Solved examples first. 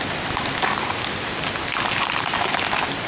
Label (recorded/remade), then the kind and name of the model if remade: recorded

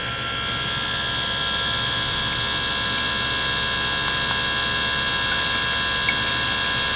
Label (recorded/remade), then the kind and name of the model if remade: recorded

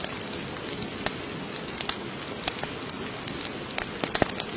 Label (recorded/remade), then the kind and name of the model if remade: recorded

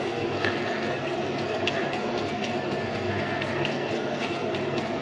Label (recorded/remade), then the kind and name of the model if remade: remade, codec, SNAC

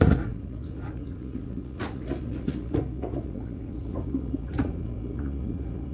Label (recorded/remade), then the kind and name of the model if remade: remade, vocoder, Vocos